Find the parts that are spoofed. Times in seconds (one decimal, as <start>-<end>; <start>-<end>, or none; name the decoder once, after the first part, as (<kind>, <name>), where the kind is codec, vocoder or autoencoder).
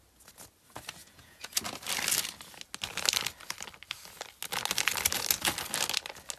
1.0-1.6 (vocoder, Vocos)